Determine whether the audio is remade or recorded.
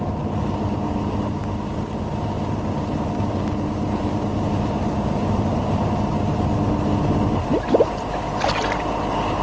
recorded